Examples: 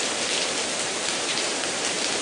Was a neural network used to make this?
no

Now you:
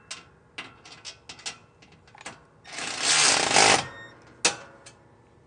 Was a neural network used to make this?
no